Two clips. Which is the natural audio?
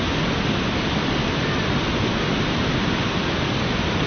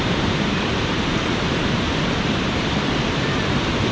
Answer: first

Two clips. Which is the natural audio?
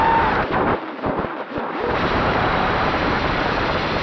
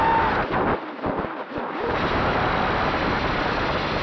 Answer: second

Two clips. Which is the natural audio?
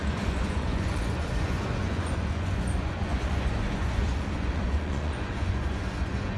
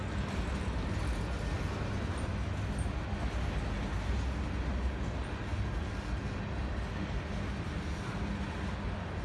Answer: second